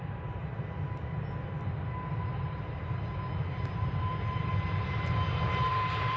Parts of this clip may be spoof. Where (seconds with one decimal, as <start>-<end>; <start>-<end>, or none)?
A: 0.0-0.4; 2.2-2.8; 3.5-6.2